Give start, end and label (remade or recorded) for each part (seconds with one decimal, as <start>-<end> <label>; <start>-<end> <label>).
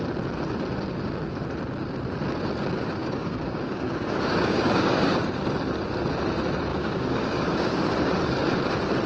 0.0-3.0 recorded; 3.0-5.2 remade; 5.2-6.7 recorded; 6.7-7.9 remade; 7.9-9.1 recorded